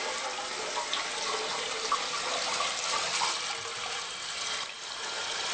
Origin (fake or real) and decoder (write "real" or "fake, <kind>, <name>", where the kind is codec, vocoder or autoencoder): real